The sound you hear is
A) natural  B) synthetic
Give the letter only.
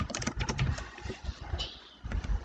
B